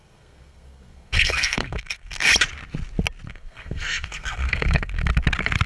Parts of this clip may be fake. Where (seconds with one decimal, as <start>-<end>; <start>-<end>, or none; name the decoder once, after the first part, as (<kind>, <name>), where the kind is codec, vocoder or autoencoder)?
0.0-2.3 (codec, SNAC); 3.3-5.0